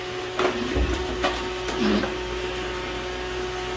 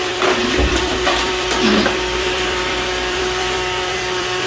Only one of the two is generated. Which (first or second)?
second